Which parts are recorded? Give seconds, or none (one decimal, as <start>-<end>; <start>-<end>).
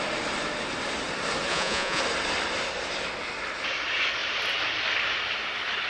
0.0-1.5; 2.0-5.9